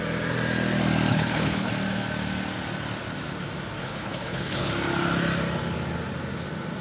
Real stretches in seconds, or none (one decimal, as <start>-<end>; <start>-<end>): 0.0-1.1; 1.7-3.8; 4.7-6.8